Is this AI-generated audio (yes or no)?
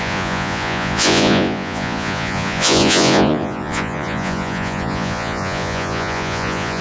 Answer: yes